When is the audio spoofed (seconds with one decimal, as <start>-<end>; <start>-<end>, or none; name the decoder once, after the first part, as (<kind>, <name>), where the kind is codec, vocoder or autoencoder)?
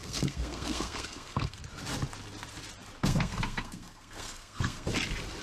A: 0.0-1.6 (codec, SNAC); 3.0-4.9